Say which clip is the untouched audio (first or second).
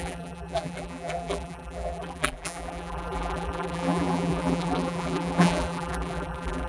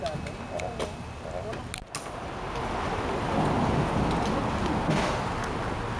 second